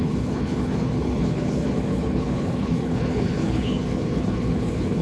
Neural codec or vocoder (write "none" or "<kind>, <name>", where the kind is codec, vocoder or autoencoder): codec, HILCodec